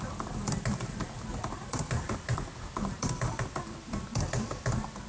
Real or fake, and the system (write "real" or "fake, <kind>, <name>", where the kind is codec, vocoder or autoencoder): real